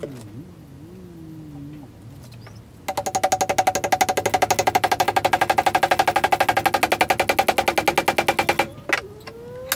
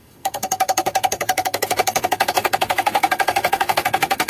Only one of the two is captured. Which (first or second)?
first